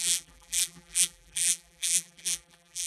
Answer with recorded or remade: remade